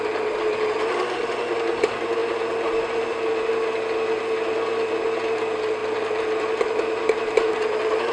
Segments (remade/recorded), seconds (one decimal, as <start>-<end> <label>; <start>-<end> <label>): 0.0-8.1 recorded